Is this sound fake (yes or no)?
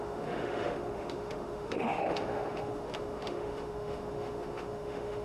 yes